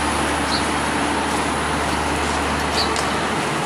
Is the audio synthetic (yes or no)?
no